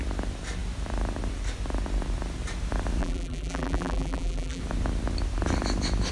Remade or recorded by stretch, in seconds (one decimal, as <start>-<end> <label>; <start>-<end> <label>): 0.0-3.0 recorded; 3.0-4.6 remade; 4.6-6.1 recorded